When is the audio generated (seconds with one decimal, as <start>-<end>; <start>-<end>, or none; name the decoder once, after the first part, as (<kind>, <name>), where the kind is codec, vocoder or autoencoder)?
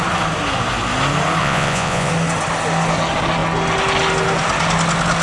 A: 1.4-2.1 (vocoder, Vocos)